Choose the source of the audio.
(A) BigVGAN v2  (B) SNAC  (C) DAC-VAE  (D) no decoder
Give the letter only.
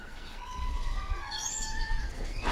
B